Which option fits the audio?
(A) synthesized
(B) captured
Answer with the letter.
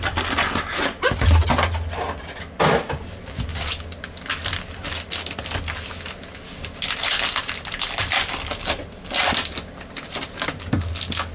B